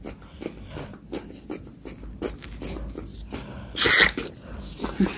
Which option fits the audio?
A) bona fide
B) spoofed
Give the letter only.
A